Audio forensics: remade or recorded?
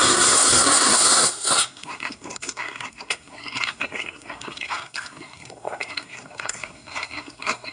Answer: remade